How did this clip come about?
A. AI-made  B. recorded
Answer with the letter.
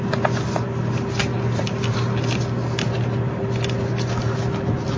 B